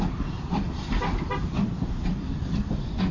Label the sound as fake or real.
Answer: fake